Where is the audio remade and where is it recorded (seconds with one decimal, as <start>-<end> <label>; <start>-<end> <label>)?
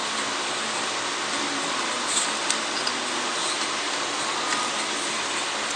0.0-4.5 recorded; 4.5-5.8 remade